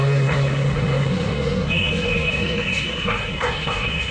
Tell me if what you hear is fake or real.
fake